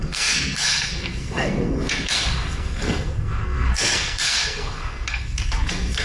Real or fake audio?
fake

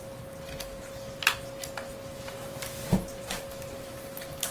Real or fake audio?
real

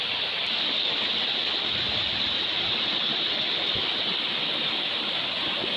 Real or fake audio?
real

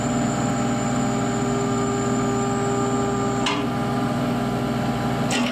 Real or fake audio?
real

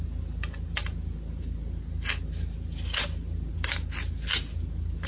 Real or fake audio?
real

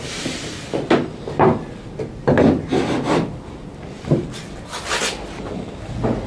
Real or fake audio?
real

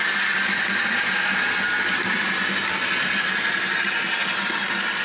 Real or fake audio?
real